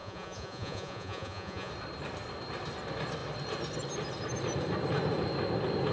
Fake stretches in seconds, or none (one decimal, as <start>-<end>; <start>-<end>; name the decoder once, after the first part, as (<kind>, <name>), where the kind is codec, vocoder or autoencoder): 0.0-1.7 (vocoder, Vocos)